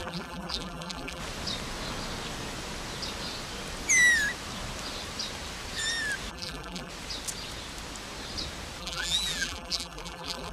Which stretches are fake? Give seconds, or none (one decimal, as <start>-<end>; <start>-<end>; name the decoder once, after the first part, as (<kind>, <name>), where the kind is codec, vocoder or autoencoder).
0.0-1.2 (vocoder, BigVGAN v2); 6.3-6.9; 8.8-10.5